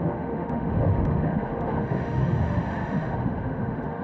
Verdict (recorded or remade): remade